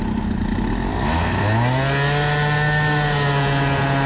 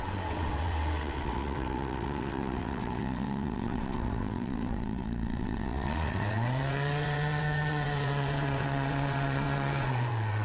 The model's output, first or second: second